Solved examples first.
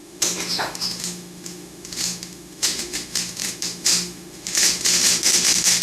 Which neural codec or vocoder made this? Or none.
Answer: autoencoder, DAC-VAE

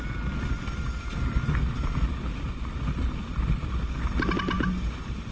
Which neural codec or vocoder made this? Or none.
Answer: none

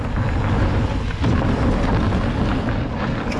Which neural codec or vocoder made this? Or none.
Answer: none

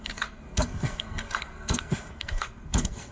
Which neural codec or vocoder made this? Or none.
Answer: codec, SNAC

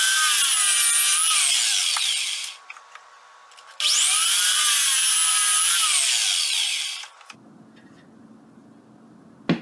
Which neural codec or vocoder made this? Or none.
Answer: none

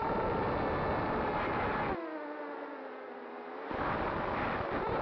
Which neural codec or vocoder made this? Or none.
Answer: none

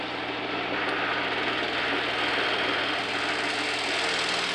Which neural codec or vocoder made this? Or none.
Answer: none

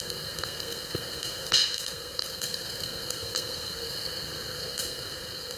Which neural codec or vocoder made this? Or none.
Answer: codec, SNAC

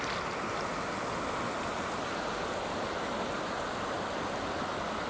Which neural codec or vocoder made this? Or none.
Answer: none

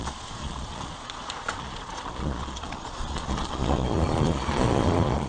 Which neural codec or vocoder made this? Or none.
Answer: vocoder, Vocos